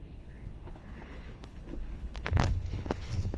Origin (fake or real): fake